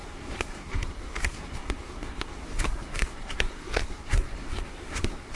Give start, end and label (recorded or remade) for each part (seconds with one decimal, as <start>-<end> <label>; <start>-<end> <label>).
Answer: 0.0-5.4 remade